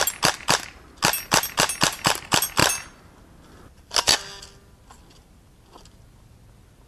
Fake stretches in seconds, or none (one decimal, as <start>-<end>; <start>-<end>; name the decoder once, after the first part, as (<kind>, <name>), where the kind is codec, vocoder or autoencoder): none